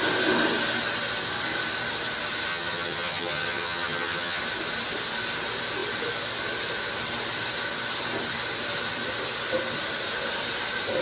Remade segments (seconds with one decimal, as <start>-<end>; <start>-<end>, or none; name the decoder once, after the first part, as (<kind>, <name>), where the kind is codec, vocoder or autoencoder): 2.5-4.4 (vocoder, HiFi-GAN)